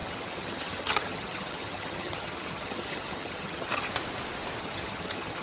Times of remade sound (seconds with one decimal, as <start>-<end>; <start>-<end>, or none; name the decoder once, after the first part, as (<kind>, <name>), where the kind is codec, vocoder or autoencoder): 0.0-3.9 (vocoder, HiFi-GAN); 4.6-5.4